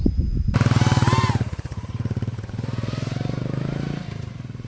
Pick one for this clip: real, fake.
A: fake